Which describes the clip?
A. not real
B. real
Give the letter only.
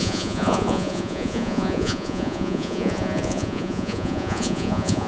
A